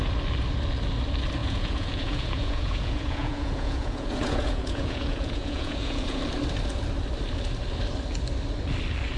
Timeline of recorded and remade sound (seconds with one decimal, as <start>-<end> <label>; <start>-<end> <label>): 0.0-1.4 recorded; 1.4-6.2 remade; 6.2-9.2 recorded